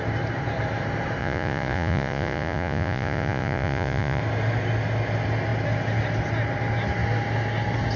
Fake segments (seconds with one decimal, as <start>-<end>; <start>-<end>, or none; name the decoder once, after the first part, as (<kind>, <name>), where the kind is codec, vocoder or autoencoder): 1.2-4.2 (vocoder, Vocos)